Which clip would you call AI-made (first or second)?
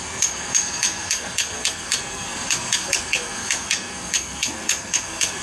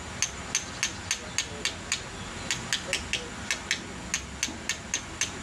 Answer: first